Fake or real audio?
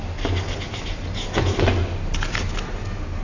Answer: real